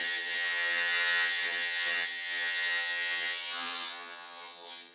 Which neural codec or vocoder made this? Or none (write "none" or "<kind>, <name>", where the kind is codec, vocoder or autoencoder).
vocoder, HiFi-GAN